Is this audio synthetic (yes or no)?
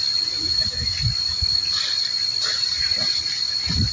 no